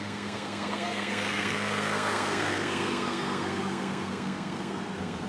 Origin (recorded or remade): remade